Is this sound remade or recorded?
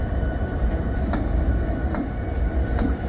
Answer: remade